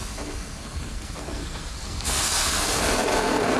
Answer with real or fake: fake